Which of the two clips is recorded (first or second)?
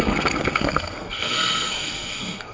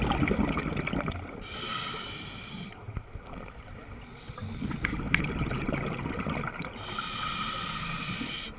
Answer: second